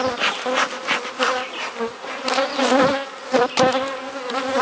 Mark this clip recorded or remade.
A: recorded